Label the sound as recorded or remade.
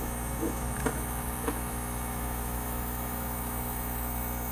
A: remade